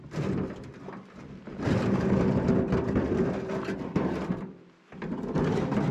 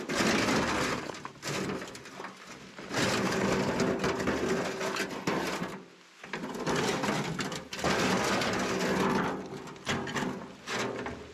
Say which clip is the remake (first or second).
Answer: first